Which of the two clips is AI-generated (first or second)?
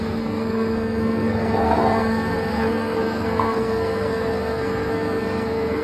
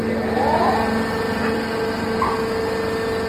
first